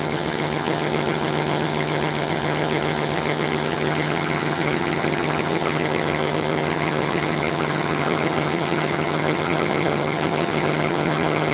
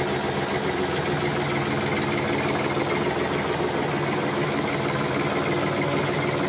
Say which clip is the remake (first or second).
first